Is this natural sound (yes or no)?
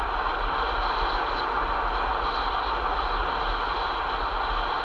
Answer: yes